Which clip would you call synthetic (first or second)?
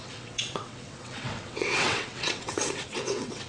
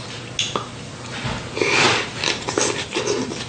first